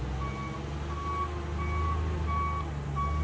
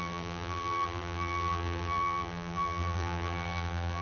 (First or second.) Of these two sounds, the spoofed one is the second